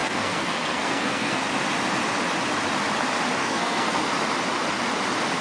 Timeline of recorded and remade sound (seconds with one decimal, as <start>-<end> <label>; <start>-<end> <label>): 0.0-1.4 remade; 1.4-3.4 recorded; 3.4-4.0 remade; 4.0-5.4 recorded